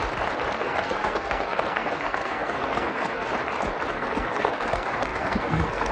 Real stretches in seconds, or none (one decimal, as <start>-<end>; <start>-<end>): 0.0-0.5; 3.3-3.9